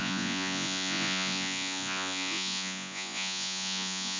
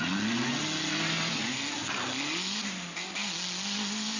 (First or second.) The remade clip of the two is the first